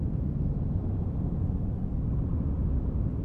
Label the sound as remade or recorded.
recorded